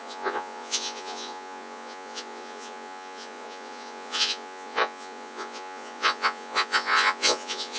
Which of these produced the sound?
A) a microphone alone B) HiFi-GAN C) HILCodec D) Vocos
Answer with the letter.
D